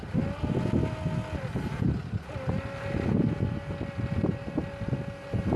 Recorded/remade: recorded